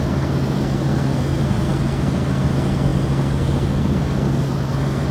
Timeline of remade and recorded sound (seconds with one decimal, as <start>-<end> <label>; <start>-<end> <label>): 0.0-5.1 remade